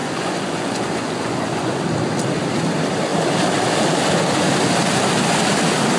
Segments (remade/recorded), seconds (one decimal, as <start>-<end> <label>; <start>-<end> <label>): 0.0-1.8 remade; 1.8-6.0 recorded